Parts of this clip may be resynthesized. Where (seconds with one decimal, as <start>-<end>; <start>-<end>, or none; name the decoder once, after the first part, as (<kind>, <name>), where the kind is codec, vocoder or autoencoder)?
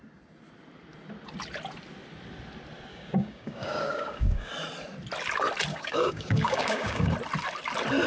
2.9-4.5 (codec, DAC); 5.7-7.1